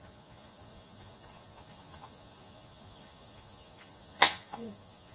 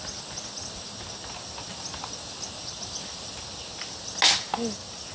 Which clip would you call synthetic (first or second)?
first